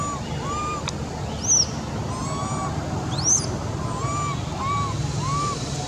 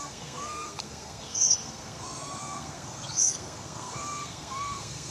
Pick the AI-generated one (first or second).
second